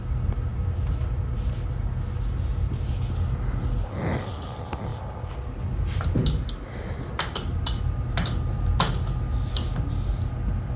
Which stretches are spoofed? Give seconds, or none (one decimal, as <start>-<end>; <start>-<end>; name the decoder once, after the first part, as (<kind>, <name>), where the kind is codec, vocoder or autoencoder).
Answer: none